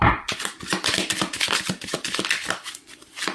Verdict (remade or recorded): recorded